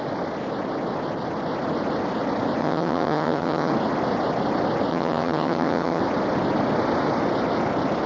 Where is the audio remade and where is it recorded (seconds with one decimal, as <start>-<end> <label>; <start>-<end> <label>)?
0.0-2.6 recorded; 2.6-3.7 remade; 3.7-4.9 recorded; 4.9-6.0 remade; 6.0-8.1 recorded